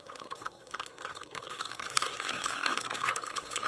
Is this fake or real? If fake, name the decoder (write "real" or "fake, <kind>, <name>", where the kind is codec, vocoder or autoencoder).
fake, codec, SNAC